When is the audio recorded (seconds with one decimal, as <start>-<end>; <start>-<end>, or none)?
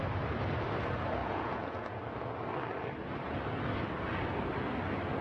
0.0-1.2; 2.0-5.2